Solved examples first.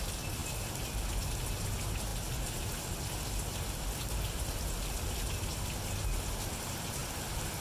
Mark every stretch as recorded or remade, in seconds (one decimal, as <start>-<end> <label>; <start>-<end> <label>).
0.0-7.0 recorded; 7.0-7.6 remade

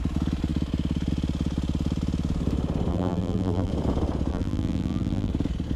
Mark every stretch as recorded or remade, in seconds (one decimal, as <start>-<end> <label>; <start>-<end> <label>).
0.0-2.9 recorded; 2.9-3.7 remade; 3.7-4.3 recorded; 4.3-5.3 remade; 5.3-5.8 recorded

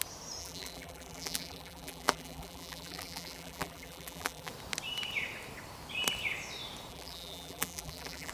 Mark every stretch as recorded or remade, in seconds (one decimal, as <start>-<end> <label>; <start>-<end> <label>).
0.0-0.4 recorded; 0.4-4.5 remade; 4.5-6.9 recorded; 6.9-8.3 remade

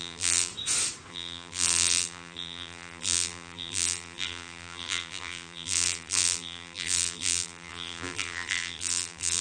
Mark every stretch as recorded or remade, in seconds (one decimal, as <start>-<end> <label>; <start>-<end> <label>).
0.0-0.5 remade; 0.5-1.1 recorded; 1.1-9.4 remade